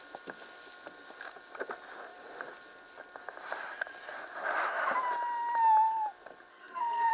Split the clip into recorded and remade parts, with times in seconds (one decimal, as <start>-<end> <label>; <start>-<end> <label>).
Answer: 0.0-6.5 recorded; 6.5-7.1 remade